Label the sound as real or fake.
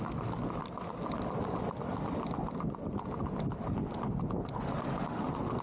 real